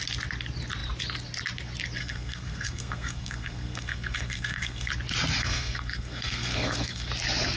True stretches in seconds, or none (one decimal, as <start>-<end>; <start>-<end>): 0.0-2.0; 4.9-5.4; 7.1-7.6